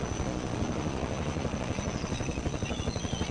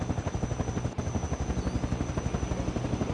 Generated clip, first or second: first